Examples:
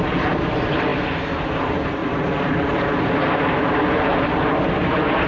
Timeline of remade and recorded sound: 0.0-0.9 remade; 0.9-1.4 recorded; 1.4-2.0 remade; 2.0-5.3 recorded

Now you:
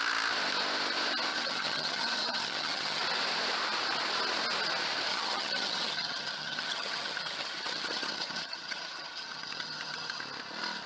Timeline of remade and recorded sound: 0.0-1.3 recorded; 1.3-3.0 remade; 3.0-5.1 recorded; 5.1-10.2 remade; 10.2-10.9 recorded

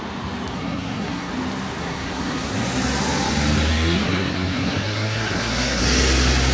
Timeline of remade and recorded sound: 0.0-0.5 recorded; 0.5-1.3 remade; 1.3-1.8 recorded; 1.8-2.5 remade; 2.5-3.7 recorded; 3.7-5.8 remade; 5.8-6.5 recorded

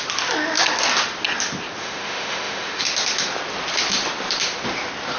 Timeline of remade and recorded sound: 0.0-1.8 recorded; 1.8-2.8 remade; 2.8-5.2 recorded

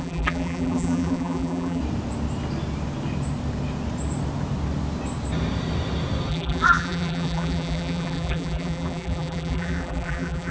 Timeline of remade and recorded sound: 0.0-1.8 remade; 1.8-6.3 recorded; 6.3-10.5 remade

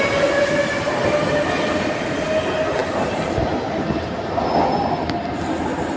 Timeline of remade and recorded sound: 0.0-6.0 recorded